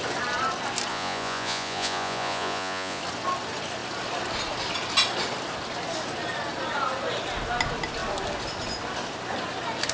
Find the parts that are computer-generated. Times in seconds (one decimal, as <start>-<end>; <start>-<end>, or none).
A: 0.9-3.0